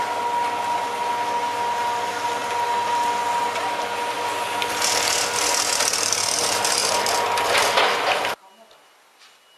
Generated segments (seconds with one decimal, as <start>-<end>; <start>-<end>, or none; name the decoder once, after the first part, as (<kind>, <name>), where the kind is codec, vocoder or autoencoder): none